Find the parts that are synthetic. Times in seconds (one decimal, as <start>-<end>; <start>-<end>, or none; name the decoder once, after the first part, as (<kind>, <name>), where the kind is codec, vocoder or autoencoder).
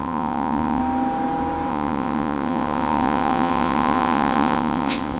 0.0-0.8 (vocoder, WaveNeXt); 1.7-5.2